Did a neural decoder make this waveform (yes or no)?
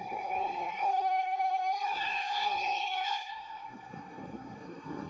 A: yes